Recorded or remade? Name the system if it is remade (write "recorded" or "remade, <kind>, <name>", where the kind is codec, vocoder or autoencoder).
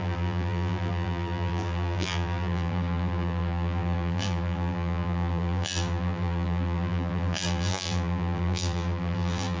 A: remade, vocoder, BigVGAN v2